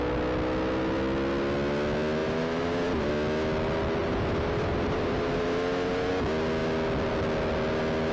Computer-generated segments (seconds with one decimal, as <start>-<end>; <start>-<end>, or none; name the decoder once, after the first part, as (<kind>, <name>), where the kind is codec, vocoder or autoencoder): 2.2-3.1 (vocoder, BigVGAN v2); 4.0-6.1